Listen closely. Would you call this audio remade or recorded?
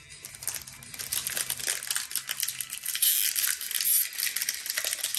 recorded